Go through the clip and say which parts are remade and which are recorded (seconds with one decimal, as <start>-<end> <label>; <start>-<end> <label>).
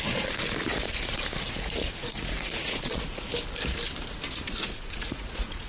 0.0-0.7 recorded; 0.7-3.3 remade; 3.3-4.6 recorded; 4.6-5.7 remade